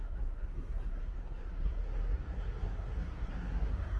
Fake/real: fake